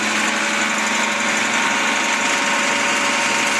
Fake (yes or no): no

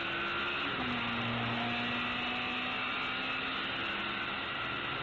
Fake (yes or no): no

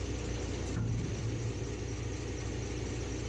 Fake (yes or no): no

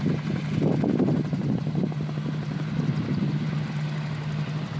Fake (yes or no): no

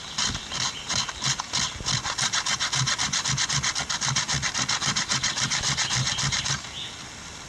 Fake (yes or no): no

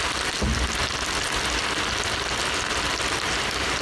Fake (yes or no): no